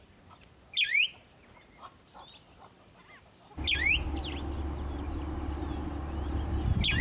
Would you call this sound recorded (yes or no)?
yes